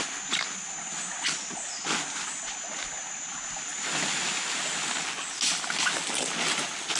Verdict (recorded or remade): recorded